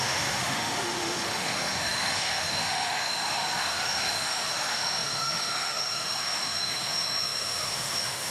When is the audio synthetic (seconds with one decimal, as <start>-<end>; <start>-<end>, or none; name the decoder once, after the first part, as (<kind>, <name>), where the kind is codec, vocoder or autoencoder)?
0.0-8.3 (autoencoder, DAC-VAE)